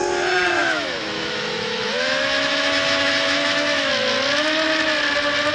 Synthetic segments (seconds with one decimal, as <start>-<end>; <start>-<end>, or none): 0.6-3.9